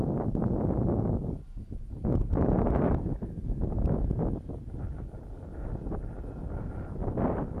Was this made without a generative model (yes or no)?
yes